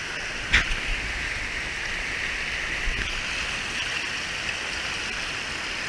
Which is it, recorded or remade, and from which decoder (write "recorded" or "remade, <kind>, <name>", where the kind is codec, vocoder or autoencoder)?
recorded